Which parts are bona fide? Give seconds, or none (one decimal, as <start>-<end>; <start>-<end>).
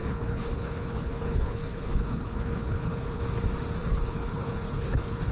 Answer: 3.2-3.8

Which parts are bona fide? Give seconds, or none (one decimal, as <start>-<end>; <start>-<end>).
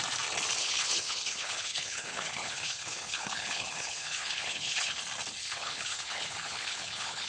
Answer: 0.0-0.6; 5.0-5.4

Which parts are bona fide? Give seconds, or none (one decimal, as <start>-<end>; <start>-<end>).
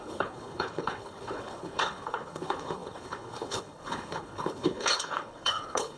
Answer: none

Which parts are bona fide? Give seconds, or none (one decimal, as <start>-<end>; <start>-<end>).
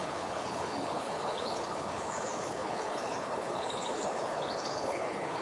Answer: none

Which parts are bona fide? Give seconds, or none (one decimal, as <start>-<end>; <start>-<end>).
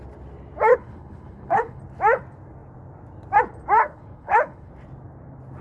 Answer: 0.0-0.7; 1.8-3.8; 4.7-5.6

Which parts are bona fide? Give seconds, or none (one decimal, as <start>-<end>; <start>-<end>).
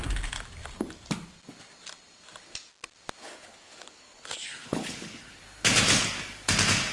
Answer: 0.0-3.2; 5.4-6.9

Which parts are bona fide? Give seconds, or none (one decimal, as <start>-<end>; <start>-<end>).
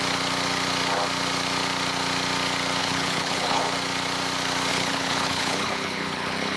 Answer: 0.0-2.8; 3.6-4.7